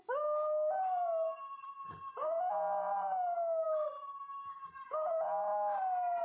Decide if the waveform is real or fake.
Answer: real